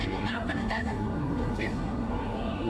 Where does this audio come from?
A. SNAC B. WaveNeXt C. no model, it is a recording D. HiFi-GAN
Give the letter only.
A